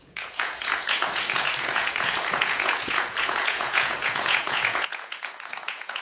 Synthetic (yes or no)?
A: yes